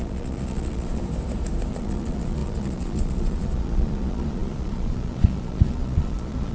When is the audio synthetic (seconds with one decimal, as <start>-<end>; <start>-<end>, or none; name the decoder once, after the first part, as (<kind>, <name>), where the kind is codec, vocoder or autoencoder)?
0.0-1.0 (vocoder, Vocos); 1.7-6.5